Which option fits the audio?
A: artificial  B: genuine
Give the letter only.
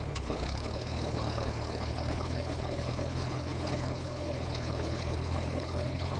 A